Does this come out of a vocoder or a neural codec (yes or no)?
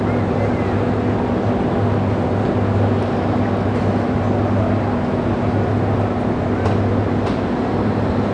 no